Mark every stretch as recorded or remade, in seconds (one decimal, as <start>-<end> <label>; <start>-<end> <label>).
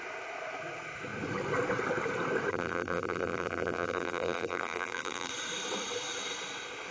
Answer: 0.0-2.5 recorded; 2.5-5.3 remade; 5.3-6.9 recorded